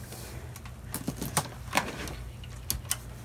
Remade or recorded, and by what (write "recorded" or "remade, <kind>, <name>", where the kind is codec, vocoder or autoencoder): recorded